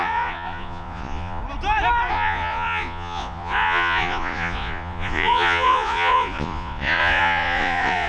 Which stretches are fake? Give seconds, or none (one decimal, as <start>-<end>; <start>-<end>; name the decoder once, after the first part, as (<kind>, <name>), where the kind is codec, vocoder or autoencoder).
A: 0.0-1.4 (vocoder, Vocos); 2.1-8.1